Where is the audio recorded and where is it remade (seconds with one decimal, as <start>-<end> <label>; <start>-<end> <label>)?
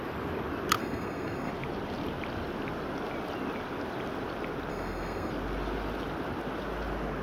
0.0-0.8 recorded; 0.8-1.5 remade; 1.5-4.7 recorded; 4.7-5.3 remade; 5.3-7.2 recorded